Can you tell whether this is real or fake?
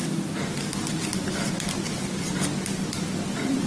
real